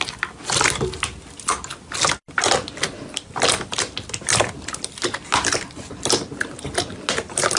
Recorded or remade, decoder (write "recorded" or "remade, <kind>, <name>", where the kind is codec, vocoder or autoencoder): recorded